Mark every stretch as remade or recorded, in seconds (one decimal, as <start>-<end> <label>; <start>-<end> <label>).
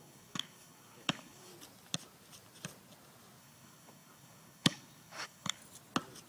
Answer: 0.0-1.5 remade; 1.5-3.4 recorded; 3.4-5.6 remade; 5.6-6.3 recorded